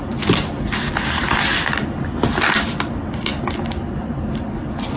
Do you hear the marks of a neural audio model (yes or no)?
no